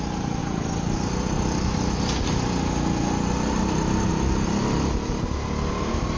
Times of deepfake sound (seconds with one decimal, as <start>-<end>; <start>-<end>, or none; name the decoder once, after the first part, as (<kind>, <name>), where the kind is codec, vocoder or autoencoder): none